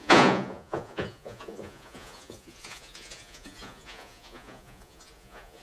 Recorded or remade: remade